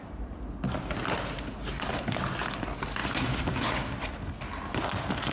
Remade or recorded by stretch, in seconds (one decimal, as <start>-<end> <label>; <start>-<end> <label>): 0.0-5.3 recorded